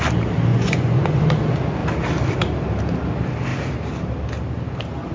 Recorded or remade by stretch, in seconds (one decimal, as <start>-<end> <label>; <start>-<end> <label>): 0.0-0.5 recorded; 0.5-1.2 remade; 1.2-5.1 recorded